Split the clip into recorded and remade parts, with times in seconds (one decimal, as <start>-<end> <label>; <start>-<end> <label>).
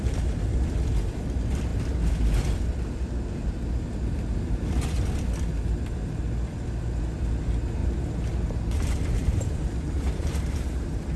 0.0-7.8 recorded; 7.8-11.2 remade